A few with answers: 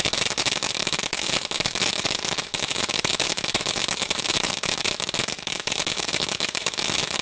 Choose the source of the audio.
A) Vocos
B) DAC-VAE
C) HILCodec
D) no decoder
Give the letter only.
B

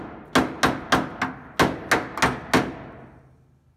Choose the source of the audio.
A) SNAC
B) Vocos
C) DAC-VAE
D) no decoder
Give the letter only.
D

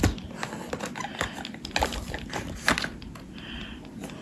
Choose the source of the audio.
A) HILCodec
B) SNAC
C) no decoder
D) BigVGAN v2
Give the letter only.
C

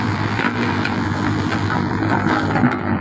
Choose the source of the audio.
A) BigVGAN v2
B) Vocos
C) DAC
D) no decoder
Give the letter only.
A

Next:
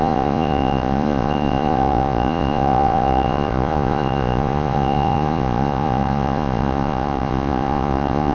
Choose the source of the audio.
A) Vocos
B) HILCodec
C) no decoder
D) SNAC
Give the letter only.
A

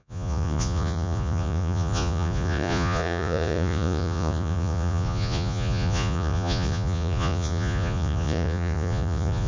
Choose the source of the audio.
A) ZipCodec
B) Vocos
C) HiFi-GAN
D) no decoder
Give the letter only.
B